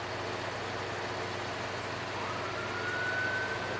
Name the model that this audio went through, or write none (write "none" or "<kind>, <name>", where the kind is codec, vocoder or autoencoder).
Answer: none